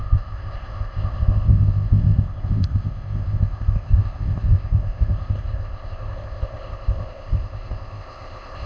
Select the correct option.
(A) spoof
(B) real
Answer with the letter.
A